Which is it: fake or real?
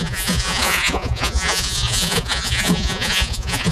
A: fake